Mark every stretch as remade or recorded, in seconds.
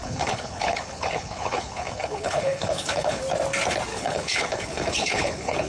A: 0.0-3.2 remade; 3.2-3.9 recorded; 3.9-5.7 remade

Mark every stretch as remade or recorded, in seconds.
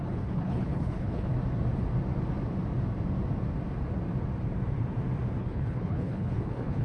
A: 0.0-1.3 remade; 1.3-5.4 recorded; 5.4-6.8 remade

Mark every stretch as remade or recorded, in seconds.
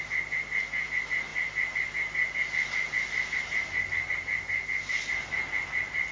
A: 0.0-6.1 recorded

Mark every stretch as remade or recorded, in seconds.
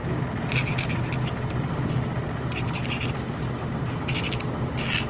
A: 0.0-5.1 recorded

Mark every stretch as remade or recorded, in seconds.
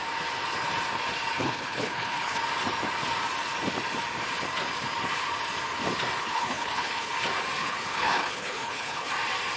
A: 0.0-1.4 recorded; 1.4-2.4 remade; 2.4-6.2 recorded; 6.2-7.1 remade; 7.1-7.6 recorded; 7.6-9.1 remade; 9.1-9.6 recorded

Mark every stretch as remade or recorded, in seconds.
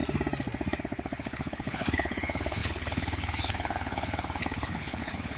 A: 0.0-0.8 recorded; 0.8-5.4 remade